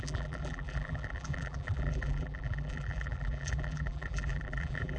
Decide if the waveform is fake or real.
fake